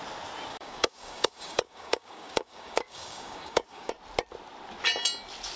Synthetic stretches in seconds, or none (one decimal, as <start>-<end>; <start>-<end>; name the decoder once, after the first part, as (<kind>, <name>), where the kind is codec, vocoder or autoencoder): 0.5-3.9 (codec, DAC)